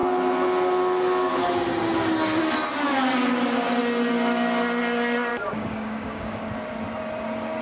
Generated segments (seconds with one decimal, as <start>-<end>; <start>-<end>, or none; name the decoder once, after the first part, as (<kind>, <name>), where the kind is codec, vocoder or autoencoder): 5.3-6.5 (codec, DAC)